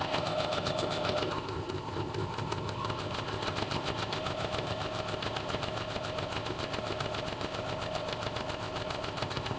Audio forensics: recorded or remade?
remade